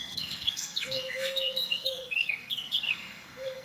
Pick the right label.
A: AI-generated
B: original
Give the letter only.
A